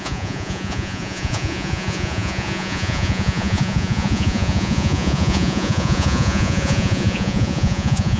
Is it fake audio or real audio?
fake